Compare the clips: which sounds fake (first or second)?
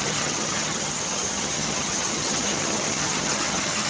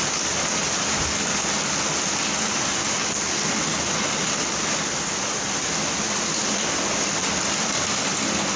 first